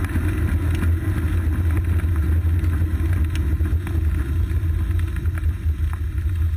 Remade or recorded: recorded